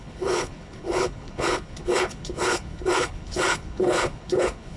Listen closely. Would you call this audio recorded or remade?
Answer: remade